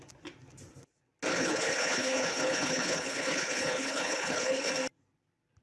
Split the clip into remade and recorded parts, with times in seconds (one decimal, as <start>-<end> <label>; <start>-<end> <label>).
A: 0.0-1.3 recorded; 1.3-4.7 remade; 4.7-5.6 recorded